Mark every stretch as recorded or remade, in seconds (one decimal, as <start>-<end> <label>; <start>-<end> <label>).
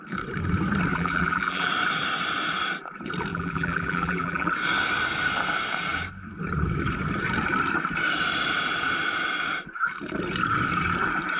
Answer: 0.0-0.9 recorded; 0.9-1.7 remade; 1.7-3.3 recorded; 3.3-4.5 remade; 4.5-11.4 recorded